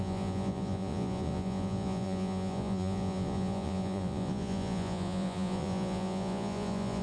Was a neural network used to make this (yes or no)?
yes